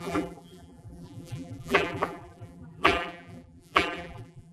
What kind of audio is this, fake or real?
fake